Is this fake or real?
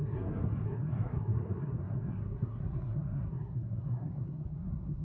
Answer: fake